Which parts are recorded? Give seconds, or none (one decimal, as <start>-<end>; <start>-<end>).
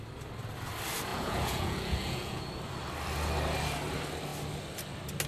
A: 0.0-1.1; 2.4-5.3